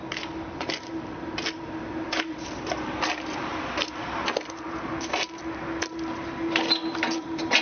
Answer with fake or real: real